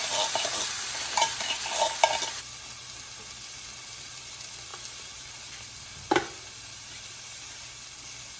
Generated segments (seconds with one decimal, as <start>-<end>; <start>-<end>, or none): 3.2-4.7; 5.6-8.4